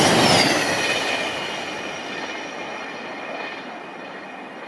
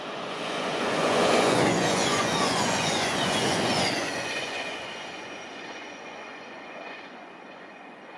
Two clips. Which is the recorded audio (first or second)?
first